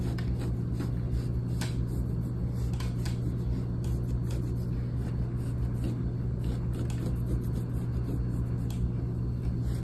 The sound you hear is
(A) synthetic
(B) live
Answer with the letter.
B